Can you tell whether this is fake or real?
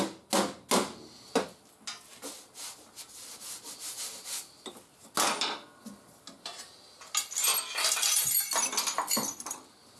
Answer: real